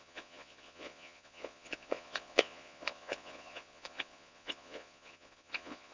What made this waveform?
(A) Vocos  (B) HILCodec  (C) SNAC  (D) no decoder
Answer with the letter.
A